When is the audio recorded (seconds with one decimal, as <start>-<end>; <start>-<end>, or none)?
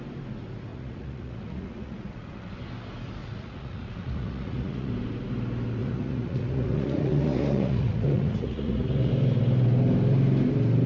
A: 0.0-0.7; 2.5-3.2; 4.9-5.8; 9.1-10.9